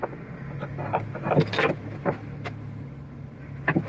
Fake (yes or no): no